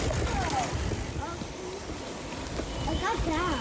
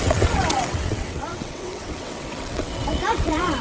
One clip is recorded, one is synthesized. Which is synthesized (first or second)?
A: second